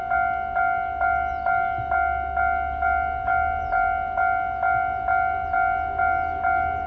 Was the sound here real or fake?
real